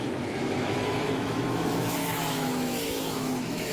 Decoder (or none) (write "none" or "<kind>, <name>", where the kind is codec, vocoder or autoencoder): autoencoder, DAC-VAE